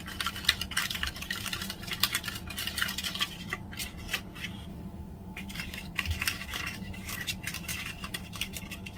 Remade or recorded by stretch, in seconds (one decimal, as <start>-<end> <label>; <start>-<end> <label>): 0.0-0.8 recorded; 0.8-1.5 remade; 1.5-4.7 recorded; 4.7-7.3 remade; 7.3-7.7 recorded; 7.7-8.6 remade; 8.6-9.0 recorded